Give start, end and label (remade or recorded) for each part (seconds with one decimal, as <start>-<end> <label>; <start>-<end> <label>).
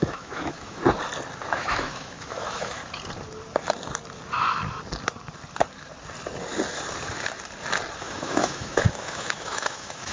0.0-0.8 remade; 0.8-1.6 recorded; 1.6-2.8 remade; 2.8-8.0 recorded; 8.0-10.1 remade